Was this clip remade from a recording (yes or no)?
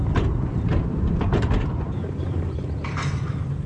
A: yes